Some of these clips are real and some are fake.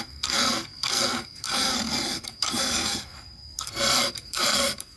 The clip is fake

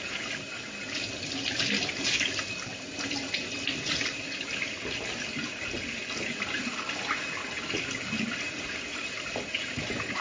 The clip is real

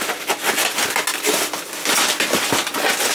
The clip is real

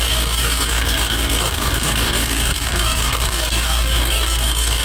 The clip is fake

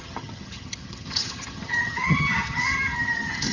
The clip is fake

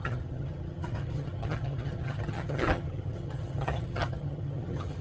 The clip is fake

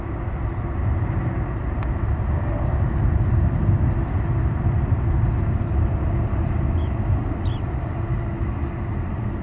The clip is real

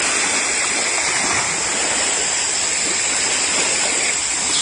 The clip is real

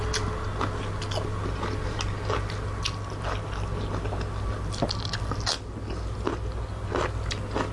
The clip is real